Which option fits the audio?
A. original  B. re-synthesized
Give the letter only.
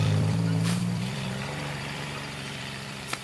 B